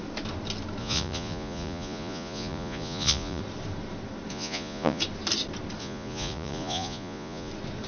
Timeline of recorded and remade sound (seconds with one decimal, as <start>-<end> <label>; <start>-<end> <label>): 0.0-0.8 recorded; 0.8-3.4 remade; 3.4-4.3 recorded; 4.3-5.0 remade; 5.0-5.8 recorded; 5.8-7.5 remade; 7.5-7.9 recorded